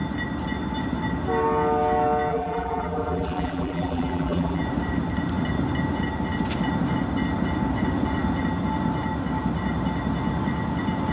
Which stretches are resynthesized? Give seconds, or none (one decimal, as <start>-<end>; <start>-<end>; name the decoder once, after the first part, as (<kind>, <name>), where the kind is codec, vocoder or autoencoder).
2.3-4.6 (vocoder, BigVGAN v2)